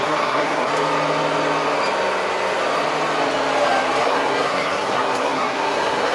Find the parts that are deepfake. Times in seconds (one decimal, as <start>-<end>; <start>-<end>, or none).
0.0-0.7; 4.0-6.1